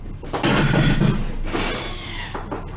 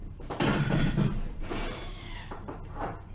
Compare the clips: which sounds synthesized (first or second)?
second